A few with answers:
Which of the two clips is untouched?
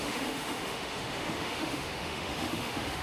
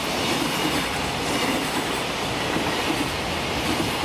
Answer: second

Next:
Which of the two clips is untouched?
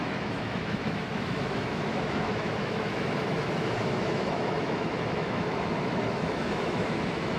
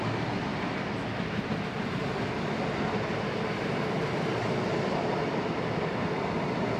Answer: second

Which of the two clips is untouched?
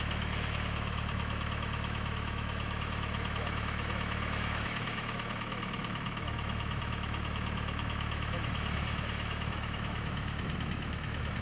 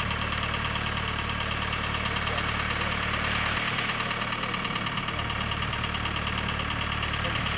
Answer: second